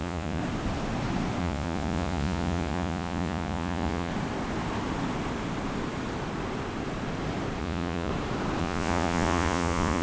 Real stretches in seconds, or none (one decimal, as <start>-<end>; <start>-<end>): 0.4-1.4; 4.1-7.6; 8.1-8.6